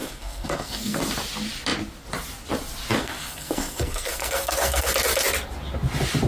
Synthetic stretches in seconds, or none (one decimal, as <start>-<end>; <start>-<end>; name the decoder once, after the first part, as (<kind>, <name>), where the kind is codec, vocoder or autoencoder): 0.0-1.0 (codec, SNAC); 3.0-4.9